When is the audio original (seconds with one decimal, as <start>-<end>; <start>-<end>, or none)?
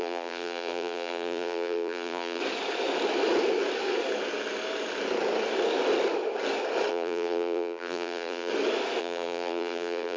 2.4-6.9; 8.5-9.0